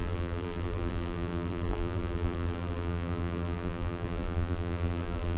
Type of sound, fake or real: fake